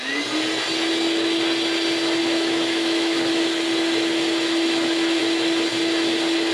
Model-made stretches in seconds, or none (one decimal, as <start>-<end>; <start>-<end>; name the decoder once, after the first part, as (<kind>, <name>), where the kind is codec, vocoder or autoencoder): 2.2-3.3 (autoencoder, DAC-VAE)